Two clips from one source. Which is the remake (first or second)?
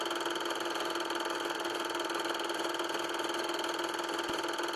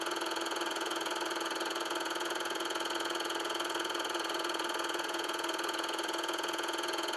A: second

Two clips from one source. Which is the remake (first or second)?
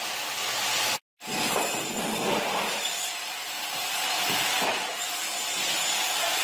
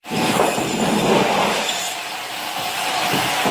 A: second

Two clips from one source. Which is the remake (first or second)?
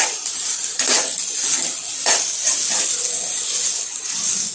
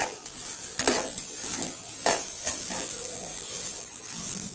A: second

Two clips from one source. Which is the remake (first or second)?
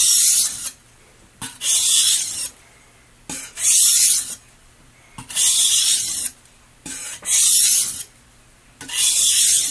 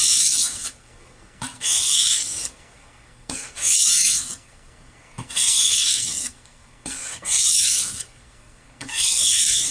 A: second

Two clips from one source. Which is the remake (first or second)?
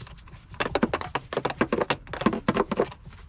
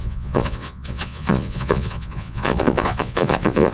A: second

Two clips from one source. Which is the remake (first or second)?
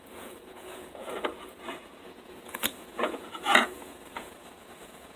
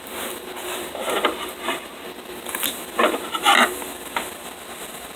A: first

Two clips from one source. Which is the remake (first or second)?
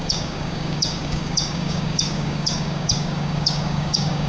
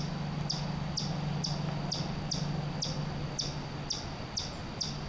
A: first